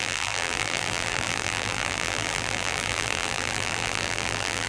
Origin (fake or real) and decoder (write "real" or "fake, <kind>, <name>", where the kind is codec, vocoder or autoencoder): fake, vocoder, BigVGAN v2